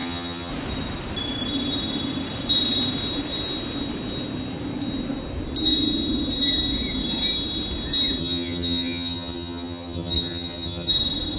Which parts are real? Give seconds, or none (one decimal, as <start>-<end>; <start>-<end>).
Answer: 0.5-8.2; 10.9-11.4